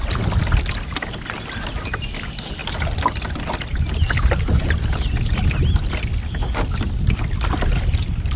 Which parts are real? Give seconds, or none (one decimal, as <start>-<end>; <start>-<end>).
0.0-8.4